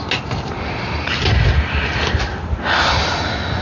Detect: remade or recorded recorded